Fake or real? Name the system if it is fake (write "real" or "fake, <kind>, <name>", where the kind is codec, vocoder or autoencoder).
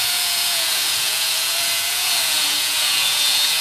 fake, vocoder, Vocos